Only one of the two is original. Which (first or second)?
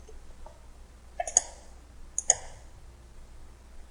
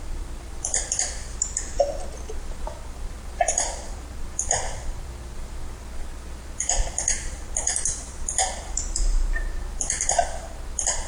first